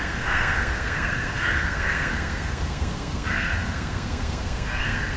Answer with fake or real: fake